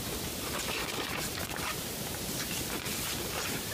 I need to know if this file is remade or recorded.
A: recorded